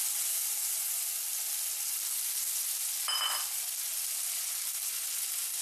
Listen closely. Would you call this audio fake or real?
real